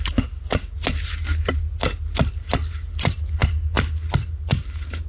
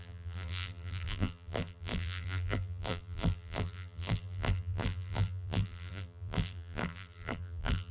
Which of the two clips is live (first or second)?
first